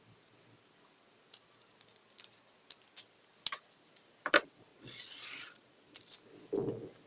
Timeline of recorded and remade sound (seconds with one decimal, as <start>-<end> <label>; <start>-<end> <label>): 0.0-4.7 recorded; 4.7-6.0 remade; 6.0-7.1 recorded